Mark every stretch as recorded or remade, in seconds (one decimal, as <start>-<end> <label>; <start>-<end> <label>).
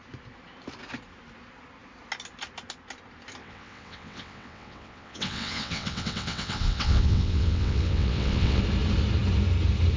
0.0-3.4 recorded; 3.4-8.6 remade; 8.6-10.0 recorded